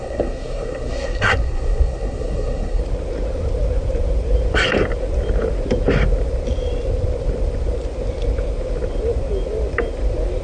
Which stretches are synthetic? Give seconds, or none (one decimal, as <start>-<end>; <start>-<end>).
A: 0.0-2.8